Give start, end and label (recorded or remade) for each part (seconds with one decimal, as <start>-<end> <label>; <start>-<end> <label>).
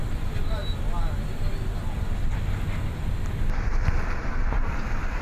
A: 0.0-0.6 remade; 0.6-3.7 recorded; 3.7-5.2 remade